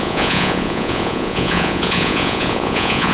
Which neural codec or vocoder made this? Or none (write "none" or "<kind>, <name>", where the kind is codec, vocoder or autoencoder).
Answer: vocoder, Vocos